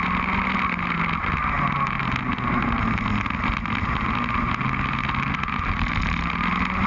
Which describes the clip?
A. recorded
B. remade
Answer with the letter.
A